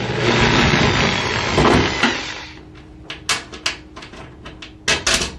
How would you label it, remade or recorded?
recorded